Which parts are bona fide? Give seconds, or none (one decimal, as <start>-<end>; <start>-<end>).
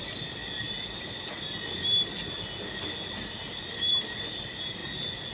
0.0-5.3